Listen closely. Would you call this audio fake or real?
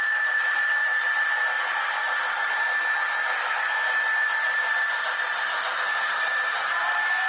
real